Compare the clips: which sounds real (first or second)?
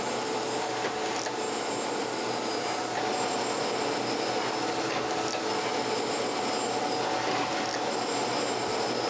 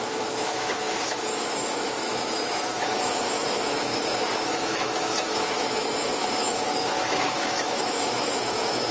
first